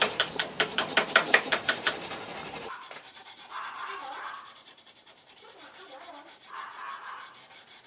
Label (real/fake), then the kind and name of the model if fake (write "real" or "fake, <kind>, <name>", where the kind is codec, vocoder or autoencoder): fake, vocoder, BigVGAN v2